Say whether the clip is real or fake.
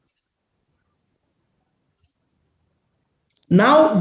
real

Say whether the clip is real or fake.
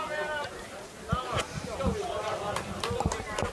real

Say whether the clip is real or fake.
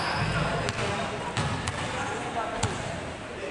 real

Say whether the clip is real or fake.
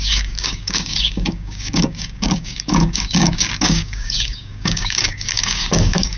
fake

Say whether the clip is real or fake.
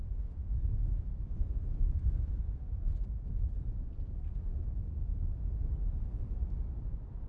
real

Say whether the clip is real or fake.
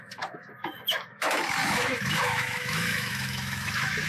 fake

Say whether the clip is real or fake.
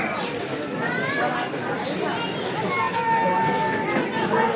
real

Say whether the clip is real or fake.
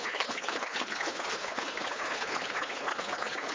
fake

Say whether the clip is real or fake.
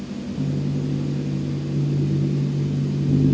real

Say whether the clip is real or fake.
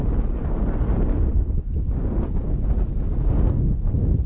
real